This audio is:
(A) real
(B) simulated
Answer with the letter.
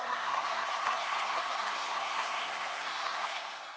B